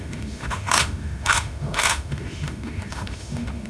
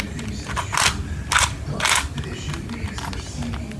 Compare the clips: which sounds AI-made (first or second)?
first